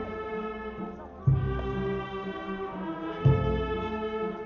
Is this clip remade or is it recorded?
recorded